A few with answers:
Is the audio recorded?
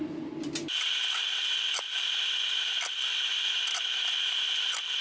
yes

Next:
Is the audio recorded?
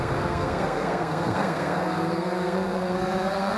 no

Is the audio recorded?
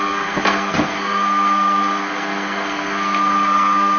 no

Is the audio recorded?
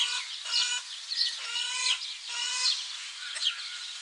no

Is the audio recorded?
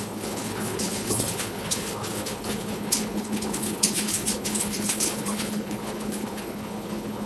no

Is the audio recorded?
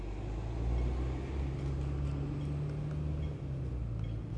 yes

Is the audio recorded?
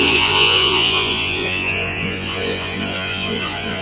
no